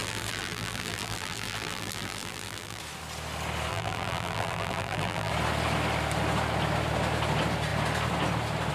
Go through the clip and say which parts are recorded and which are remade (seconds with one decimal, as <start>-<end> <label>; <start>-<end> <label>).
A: 0.0-2.8 remade; 2.8-3.7 recorded; 3.7-5.3 remade; 5.3-8.7 recorded